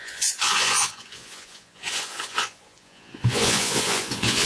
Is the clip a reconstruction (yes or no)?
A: yes